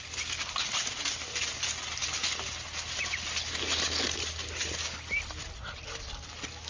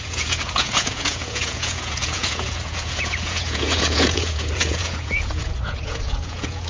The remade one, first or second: second